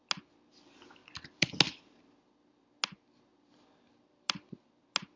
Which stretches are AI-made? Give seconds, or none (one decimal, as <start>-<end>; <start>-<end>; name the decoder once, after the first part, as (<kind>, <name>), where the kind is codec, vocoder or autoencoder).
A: 1.0-1.5 (vocoder, BigVGAN v2); 3.3-4.8